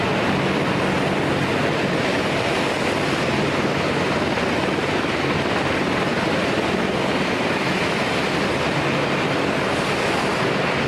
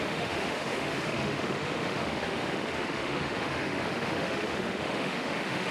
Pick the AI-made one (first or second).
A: second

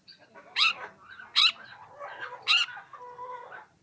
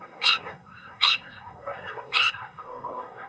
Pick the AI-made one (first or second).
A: second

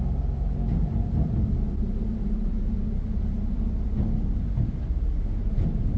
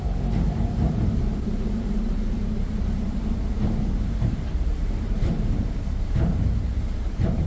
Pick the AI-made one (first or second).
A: second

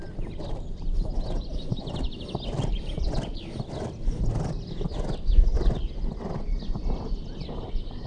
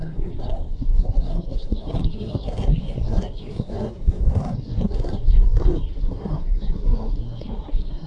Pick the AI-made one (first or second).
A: second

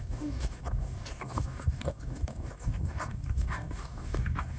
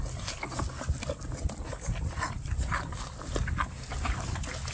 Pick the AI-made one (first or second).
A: first